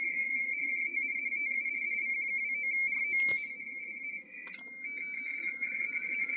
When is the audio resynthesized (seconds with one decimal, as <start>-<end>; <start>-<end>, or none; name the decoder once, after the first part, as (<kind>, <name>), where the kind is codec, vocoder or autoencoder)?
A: 0.0-2.1 (vocoder, Vocos); 5.4-6.4